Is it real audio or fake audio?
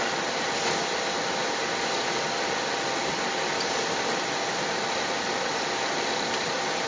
real